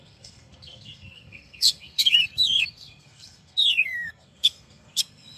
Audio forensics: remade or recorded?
remade